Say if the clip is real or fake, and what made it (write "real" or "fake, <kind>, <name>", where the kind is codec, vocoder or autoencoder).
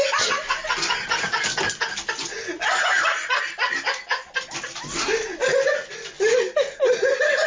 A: real